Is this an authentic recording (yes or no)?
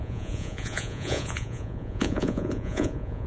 no